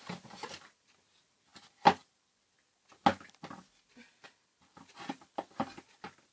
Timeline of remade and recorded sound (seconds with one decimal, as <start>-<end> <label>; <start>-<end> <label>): 0.0-6.3 recorded